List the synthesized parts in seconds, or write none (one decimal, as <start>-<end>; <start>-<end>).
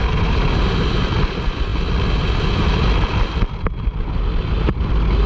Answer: none